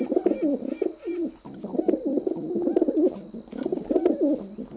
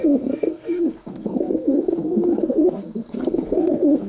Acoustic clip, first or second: first